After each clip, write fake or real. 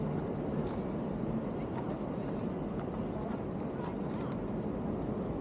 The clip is real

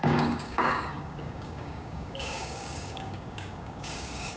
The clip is fake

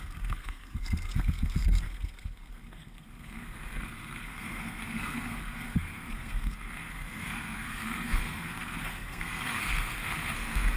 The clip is fake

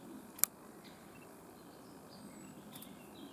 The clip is real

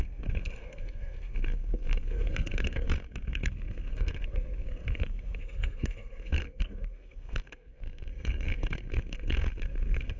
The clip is fake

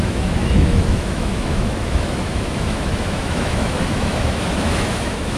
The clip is fake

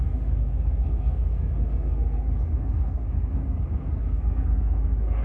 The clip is fake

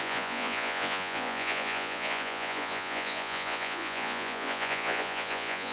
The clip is fake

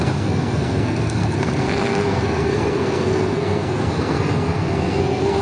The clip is fake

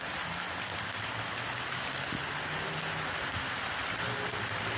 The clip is real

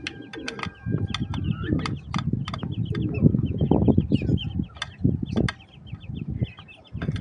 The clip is real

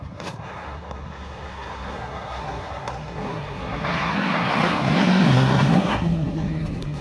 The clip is fake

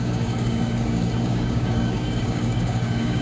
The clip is fake